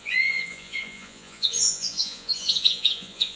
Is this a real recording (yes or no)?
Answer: no